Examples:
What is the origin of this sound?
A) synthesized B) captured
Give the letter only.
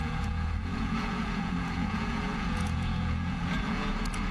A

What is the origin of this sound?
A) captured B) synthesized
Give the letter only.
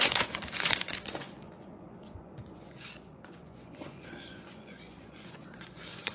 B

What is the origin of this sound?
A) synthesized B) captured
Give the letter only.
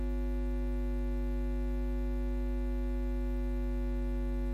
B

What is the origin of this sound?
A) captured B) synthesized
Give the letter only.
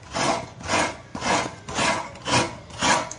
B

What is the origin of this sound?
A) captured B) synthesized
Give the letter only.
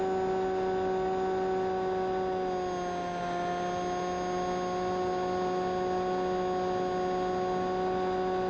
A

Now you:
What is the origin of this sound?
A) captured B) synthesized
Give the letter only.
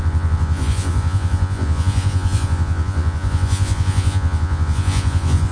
B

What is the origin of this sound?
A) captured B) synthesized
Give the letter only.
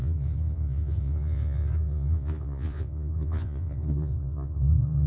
B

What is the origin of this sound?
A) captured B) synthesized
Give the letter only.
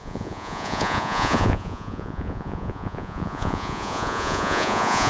B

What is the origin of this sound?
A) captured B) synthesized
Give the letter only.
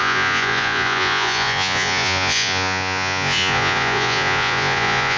B